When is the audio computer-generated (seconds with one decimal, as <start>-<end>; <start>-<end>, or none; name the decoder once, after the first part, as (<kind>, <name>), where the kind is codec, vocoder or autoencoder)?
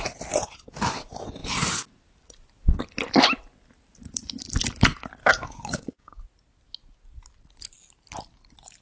5.2-6.2 (codec, DAC)